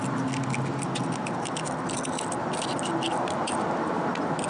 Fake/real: real